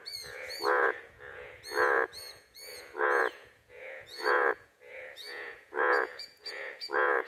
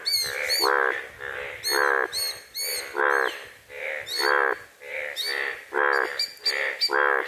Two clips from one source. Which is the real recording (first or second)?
second